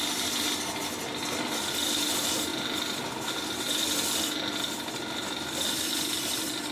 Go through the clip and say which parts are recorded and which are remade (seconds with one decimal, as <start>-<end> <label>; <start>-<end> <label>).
0.0-6.7 recorded